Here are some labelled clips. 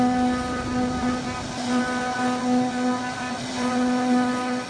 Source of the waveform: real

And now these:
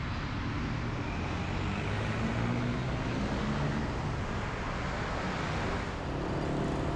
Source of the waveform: real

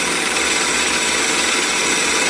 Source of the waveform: real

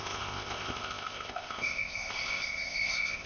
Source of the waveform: fake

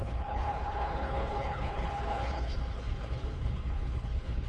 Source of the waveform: fake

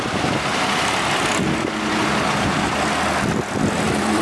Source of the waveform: real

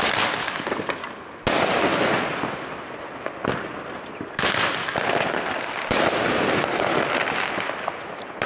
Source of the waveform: real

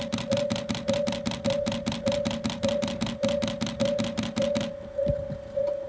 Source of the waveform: real